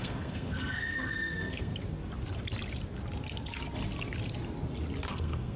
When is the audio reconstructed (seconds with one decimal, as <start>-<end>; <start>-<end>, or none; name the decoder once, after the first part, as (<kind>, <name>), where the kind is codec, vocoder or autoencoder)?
0.0-1.7 (codec, SNAC); 5.1-5.6